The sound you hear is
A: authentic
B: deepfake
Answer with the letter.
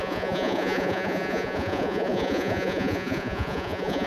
B